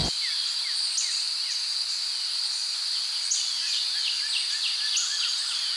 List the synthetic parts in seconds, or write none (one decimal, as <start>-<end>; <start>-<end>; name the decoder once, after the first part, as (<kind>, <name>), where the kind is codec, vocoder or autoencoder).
none